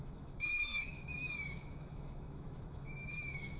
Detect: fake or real fake